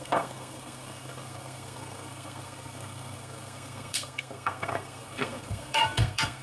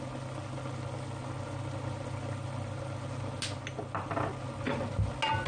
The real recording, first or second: second